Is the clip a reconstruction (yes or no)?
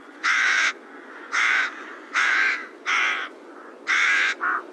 yes